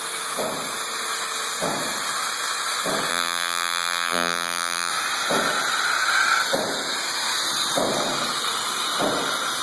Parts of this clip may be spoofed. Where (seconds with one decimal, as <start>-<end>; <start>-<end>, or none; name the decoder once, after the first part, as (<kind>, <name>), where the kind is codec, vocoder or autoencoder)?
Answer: 3.1-4.9 (vocoder, BigVGAN v2)